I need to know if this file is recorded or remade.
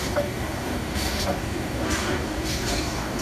remade